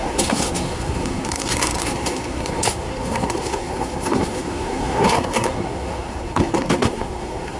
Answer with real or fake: fake